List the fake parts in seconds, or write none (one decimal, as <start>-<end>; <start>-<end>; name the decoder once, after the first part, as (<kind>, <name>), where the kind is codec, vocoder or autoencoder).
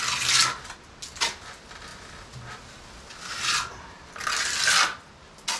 none